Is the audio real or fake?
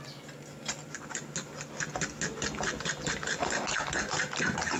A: real